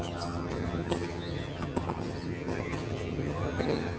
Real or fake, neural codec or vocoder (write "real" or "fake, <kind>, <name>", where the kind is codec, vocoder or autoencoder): fake, vocoder, HiFi-GAN